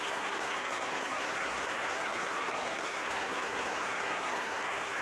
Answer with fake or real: fake